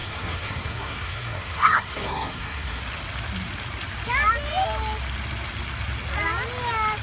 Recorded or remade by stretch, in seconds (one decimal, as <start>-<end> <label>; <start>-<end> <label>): 0.0-2.8 remade; 2.8-7.0 recorded